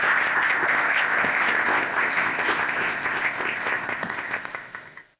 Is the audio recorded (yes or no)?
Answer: no